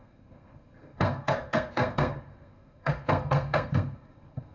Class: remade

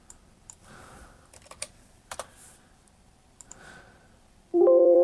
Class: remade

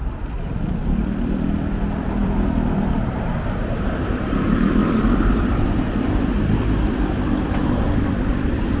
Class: remade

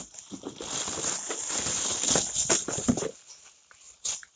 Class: recorded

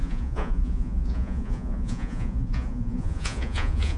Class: remade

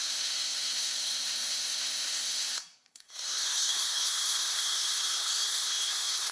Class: remade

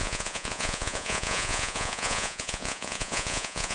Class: remade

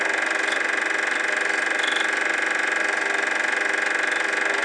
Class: recorded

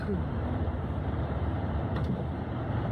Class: remade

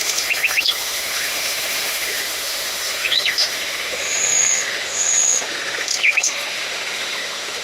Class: remade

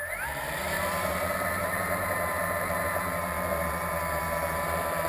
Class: remade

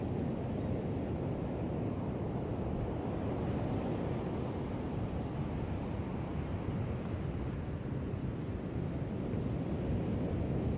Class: recorded